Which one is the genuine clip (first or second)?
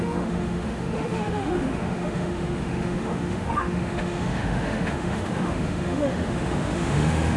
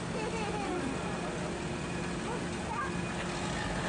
second